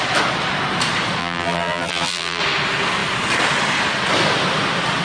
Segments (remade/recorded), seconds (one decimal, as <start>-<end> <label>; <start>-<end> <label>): 0.0-1.2 recorded; 1.2-2.4 remade; 2.4-5.0 recorded